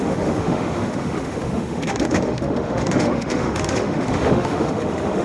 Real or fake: fake